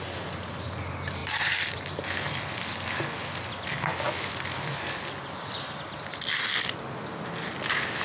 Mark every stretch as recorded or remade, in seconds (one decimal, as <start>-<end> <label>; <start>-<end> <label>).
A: 0.0-8.0 recorded